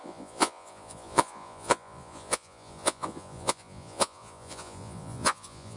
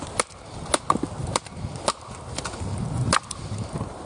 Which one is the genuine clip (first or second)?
second